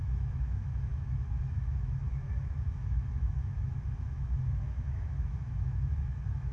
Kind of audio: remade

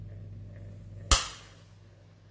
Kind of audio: recorded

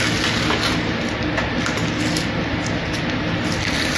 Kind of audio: recorded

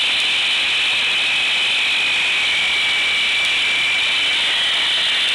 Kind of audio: recorded